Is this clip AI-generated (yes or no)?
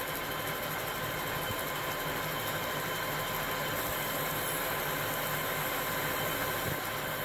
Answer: no